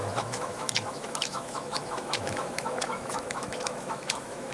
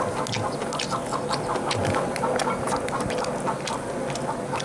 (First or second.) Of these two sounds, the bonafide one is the second